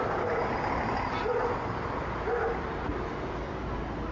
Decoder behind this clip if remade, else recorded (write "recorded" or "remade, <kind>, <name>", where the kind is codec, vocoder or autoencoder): recorded